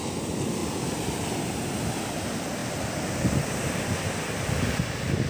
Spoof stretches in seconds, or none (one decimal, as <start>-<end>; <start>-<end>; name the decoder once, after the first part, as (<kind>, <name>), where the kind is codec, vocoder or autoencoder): 0.6-1.3 (vocoder, BigVGAN v2); 2.6-4.6